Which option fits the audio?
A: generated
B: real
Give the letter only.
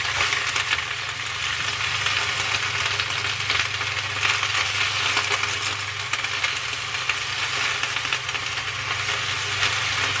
B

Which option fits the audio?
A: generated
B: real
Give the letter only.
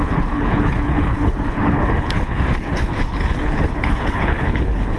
A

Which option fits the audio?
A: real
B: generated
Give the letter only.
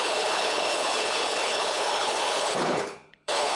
B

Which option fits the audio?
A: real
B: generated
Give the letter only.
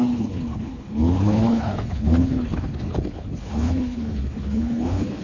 B